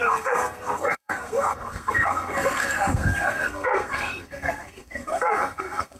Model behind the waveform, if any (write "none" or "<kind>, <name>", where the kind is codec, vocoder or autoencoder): codec, SNAC